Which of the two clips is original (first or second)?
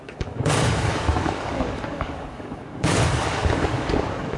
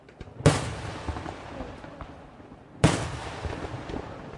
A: second